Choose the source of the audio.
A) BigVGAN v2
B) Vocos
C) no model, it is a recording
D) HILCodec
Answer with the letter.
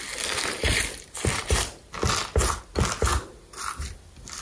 C